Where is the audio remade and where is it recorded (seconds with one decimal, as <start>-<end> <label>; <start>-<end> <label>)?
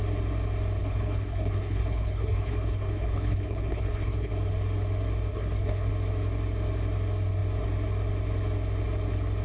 0.0-0.8 recorded; 0.8-4.3 remade; 4.3-5.3 recorded; 5.3-5.9 remade; 5.9-9.4 recorded